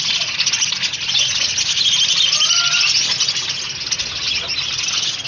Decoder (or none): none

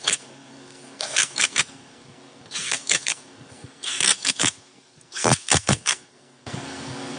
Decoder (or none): codec, SNAC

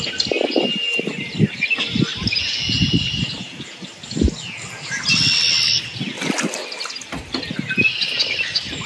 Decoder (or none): none